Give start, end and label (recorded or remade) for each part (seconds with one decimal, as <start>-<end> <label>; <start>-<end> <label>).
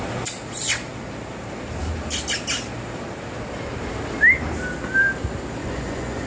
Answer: 0.0-5.6 recorded; 5.6-6.3 remade